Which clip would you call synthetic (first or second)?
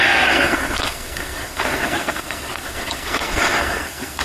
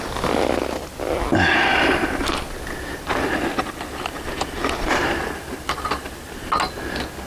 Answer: first